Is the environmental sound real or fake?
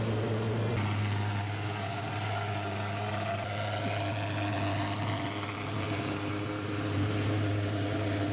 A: real